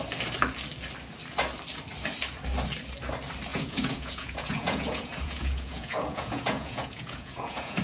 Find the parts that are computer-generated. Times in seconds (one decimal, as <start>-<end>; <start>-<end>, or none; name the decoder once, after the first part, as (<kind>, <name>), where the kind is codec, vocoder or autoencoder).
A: 3.5-7.8 (vocoder, Vocos)